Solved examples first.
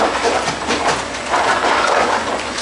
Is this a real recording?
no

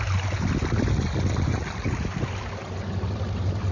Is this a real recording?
yes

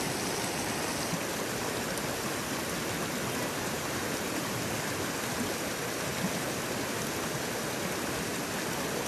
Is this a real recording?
yes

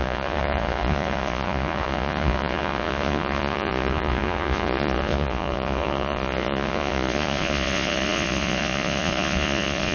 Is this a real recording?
no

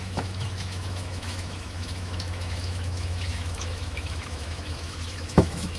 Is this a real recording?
no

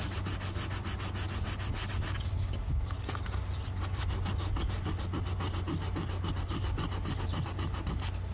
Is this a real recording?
yes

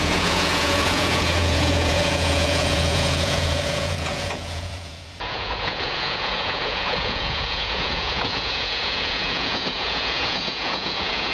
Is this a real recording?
no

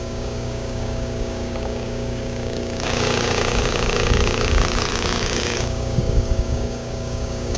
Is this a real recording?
no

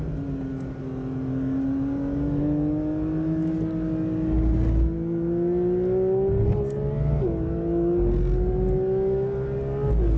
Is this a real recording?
yes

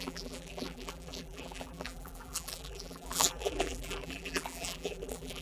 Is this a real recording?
no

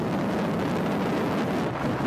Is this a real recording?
yes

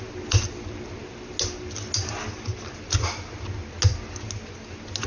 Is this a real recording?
yes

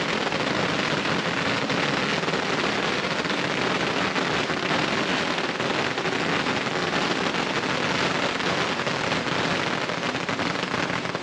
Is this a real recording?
yes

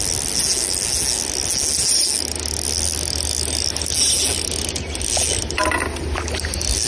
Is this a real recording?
yes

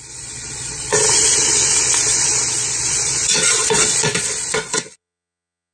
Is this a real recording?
no